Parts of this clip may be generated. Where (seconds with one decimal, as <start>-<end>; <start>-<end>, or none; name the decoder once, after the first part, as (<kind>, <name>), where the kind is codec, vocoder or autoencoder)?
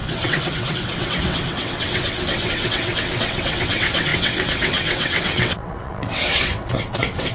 0.0-7.3 (vocoder, WaveNeXt)